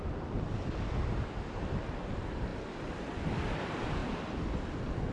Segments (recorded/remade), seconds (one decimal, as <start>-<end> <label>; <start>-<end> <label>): 0.0-5.1 recorded